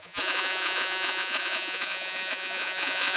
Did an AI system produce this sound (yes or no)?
yes